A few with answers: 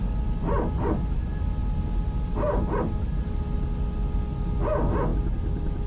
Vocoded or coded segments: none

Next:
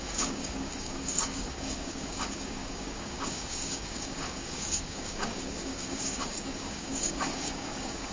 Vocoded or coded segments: 0.0-8.1 (codec, DAC)

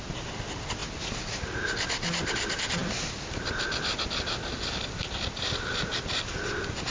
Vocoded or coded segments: none

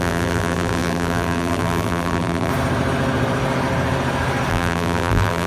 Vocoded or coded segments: 0.0-2.5 (vocoder, BigVGAN v2); 4.5-5.5

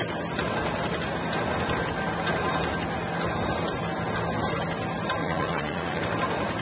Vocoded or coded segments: 5.2-6.0 (vocoder, Vocos)

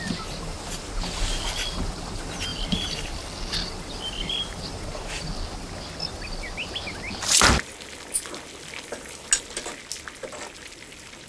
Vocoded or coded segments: 2.5-4.8 (vocoder, BigVGAN v2)

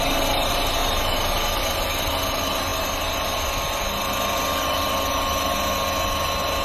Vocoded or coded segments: 0.8-1.6 (vocoder, BigVGAN v2)